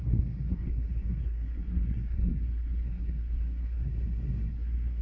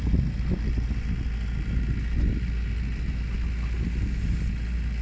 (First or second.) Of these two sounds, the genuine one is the second